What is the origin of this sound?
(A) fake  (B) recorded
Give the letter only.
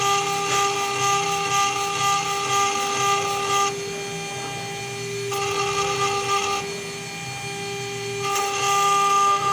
B